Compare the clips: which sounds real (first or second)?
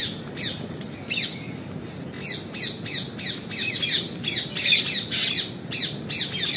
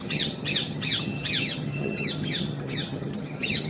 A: first